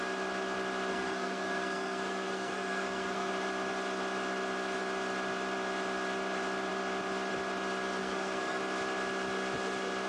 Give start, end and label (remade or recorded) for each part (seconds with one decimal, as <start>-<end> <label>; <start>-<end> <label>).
0.0-0.9 recorded; 0.9-3.3 remade; 3.3-8.0 recorded; 8.0-8.6 remade; 8.6-10.1 recorded